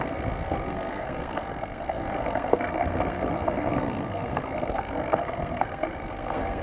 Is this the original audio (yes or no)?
no